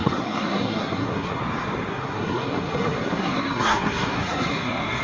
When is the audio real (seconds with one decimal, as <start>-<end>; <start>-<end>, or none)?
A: 1.4-1.9